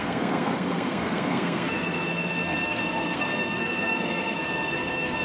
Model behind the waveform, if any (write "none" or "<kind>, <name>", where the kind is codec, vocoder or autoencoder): codec, SNAC